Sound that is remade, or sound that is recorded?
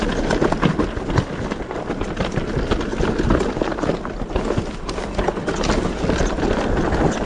recorded